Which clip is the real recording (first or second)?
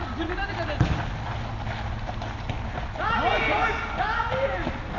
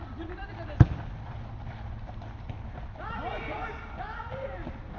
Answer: first